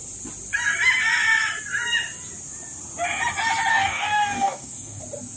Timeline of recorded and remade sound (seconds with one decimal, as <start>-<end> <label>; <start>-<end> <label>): 0.0-3.7 recorded; 3.7-5.0 remade; 5.0-5.4 recorded

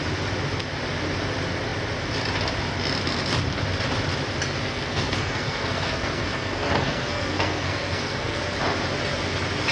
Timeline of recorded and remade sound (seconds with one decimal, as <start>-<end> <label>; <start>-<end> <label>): 0.0-4.6 recorded; 4.6-8.4 remade; 8.4-9.7 recorded

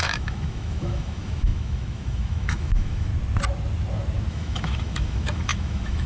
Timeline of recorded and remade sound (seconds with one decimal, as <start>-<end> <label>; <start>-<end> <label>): 0.0-3.1 remade; 3.1-4.3 recorded; 4.3-6.1 remade

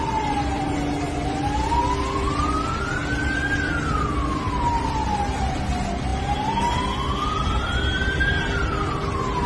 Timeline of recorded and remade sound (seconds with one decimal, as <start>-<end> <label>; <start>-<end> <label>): 0.0-9.5 recorded

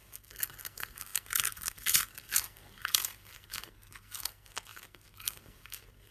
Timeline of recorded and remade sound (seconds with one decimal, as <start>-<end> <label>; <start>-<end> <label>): 0.0-6.1 remade

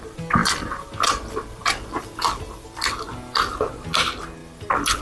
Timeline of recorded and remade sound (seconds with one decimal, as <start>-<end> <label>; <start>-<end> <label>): 0.0-0.4 recorded; 0.4-3.4 remade; 3.4-4.4 recorded; 4.4-5.0 remade

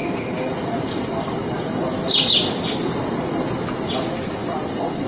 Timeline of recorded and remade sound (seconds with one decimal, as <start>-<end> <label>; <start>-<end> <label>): 0.0-1.4 recorded; 1.4-3.1 remade; 3.1-4.4 recorded; 4.4-5.1 remade